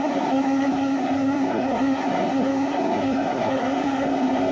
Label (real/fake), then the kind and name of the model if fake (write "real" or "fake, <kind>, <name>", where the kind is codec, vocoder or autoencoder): fake, codec, SNAC